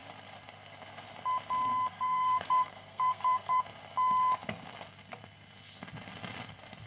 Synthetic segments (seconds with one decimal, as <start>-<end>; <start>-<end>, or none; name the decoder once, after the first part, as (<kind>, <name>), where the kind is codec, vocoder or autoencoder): 1.9-3.6 (codec, SNAC)